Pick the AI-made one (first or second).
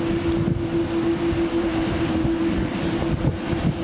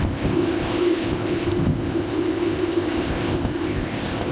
second